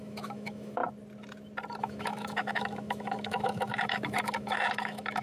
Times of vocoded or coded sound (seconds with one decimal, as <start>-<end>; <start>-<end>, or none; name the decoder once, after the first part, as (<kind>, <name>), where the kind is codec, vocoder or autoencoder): 0.0-0.8 (autoencoder, DAC-VAE); 1.8-5.2